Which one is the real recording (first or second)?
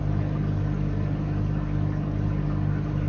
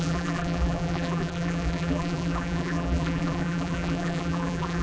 first